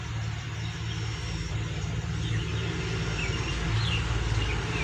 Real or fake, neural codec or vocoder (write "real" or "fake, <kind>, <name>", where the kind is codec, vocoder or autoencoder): real